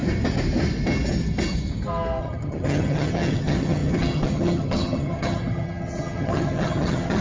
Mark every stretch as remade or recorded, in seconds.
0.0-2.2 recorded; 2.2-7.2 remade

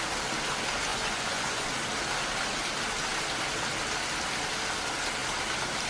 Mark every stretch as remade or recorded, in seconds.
0.0-0.9 recorded; 0.9-1.7 remade; 1.7-5.9 recorded

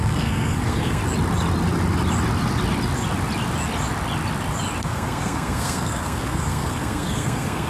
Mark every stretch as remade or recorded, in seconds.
0.0-1.0 remade; 1.0-4.8 recorded; 4.8-7.7 remade

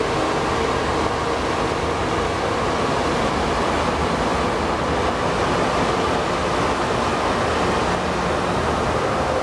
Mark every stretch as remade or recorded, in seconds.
0.0-9.4 recorded

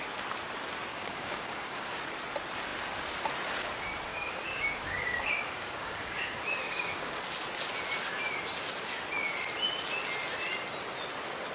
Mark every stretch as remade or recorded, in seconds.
0.0-0.9 recorded; 0.9-2.0 remade; 2.0-4.1 recorded; 4.1-7.2 remade; 7.2-11.5 recorded